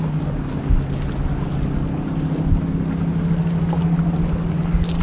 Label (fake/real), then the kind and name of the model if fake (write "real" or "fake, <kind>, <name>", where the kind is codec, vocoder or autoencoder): real